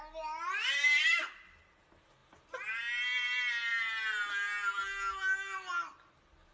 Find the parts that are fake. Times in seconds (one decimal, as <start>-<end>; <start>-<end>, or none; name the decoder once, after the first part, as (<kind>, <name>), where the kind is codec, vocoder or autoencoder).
none